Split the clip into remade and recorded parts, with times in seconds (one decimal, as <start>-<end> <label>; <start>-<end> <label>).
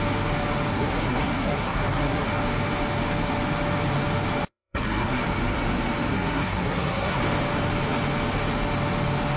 0.0-0.7 recorded; 0.7-2.3 remade; 2.3-4.5 recorded; 4.5-5.2 remade; 5.2-6.1 recorded; 6.1-7.2 remade; 7.2-9.4 recorded